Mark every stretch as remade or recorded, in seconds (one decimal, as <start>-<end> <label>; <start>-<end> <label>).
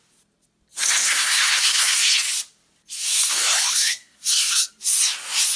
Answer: 0.0-1.0 recorded; 1.0-2.1 remade; 2.1-3.0 recorded; 3.0-4.7 remade; 4.7-5.6 recorded